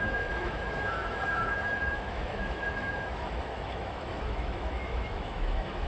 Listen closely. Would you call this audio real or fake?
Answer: fake